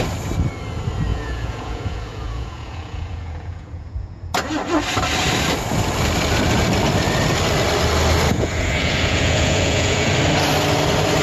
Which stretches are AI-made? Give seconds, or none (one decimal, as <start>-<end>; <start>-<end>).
1.1-4.3; 8.3-10.1